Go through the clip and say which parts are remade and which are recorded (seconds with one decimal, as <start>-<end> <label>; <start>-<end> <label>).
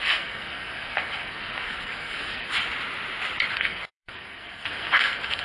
0.0-2.5 remade; 2.5-3.5 recorded; 3.5-5.4 remade